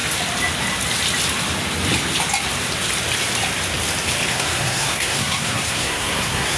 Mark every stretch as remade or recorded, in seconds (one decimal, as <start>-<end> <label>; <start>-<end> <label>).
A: 0.0-4.3 recorded; 4.3-6.6 remade